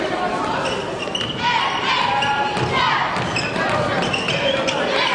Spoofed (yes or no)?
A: no